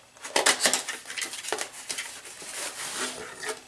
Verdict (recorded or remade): recorded